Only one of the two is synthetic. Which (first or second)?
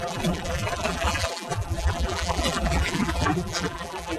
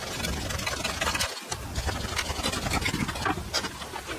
first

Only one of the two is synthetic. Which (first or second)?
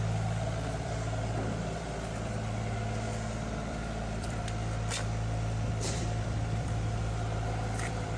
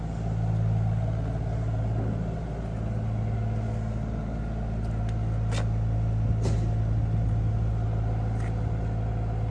first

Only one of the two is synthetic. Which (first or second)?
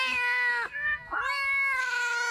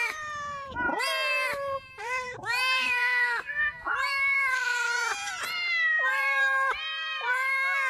second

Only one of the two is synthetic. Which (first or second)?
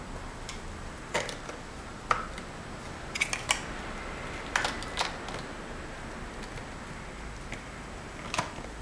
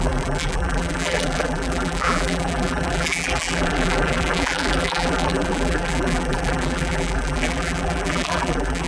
second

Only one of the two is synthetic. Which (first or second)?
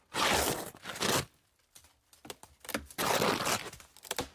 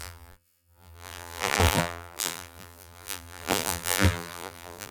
second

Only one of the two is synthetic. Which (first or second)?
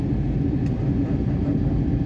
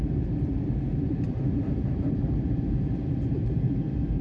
second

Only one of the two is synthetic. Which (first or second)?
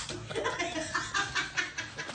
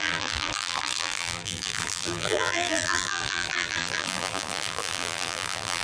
second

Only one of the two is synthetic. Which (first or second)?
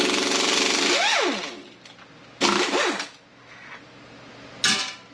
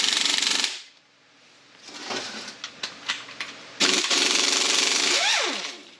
second